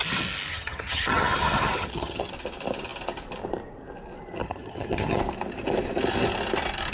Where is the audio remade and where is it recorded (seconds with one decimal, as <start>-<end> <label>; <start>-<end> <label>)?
0.0-0.5 recorded; 0.5-2.3 remade; 2.3-4.4 recorded; 4.4-5.2 remade; 5.2-6.9 recorded

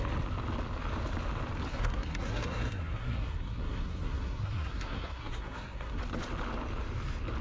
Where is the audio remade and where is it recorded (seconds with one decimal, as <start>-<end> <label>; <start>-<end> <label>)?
0.0-1.7 recorded; 1.7-6.0 remade; 6.0-7.4 recorded

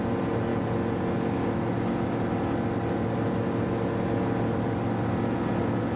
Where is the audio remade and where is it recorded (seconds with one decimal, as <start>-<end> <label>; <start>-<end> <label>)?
0.0-6.0 recorded